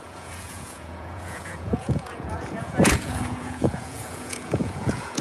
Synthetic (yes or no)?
yes